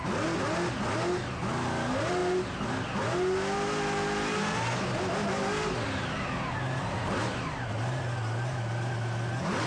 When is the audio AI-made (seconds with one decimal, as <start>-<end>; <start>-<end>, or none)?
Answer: none